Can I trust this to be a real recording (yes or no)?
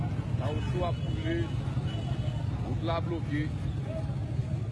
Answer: yes